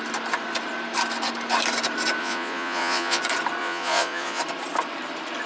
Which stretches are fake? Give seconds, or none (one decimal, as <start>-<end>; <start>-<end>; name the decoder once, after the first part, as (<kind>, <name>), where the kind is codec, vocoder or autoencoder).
2.2-3.2 (vocoder, Vocos); 3.6-4.4